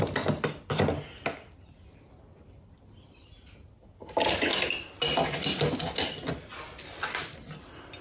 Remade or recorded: recorded